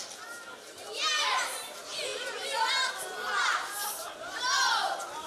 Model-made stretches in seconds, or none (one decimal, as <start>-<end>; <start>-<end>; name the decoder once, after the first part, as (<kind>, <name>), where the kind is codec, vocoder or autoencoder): 3.8-4.4 (vocoder, BigVGAN v2)